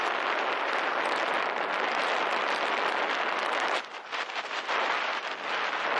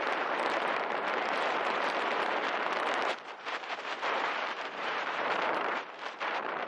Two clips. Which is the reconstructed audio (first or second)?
second